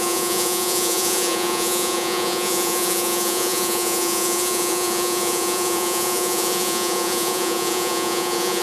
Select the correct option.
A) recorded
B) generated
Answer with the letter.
B